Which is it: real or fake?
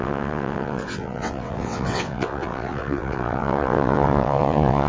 fake